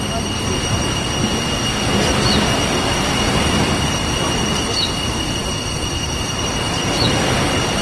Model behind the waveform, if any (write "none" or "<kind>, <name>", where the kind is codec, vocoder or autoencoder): none